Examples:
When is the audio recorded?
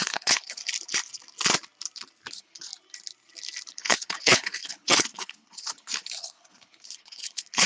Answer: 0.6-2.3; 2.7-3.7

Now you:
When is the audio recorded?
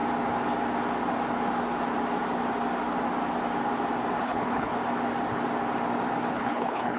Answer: 0.0-4.2; 4.7-6.3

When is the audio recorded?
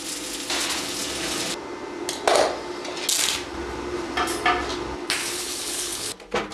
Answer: 0.0-5.2; 6.1-6.5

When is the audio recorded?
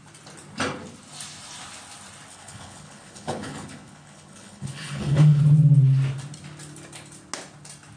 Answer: 0.0-2.3; 5.4-8.0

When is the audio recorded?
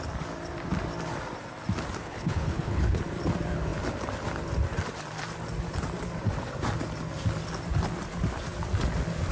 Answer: 0.0-2.0; 3.0-9.3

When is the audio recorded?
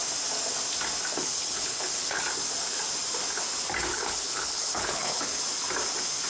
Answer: 0.0-1.1; 2.2-3.9; 5.4-6.3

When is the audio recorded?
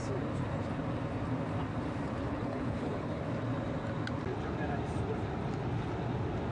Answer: 0.0-2.2; 3.2-6.5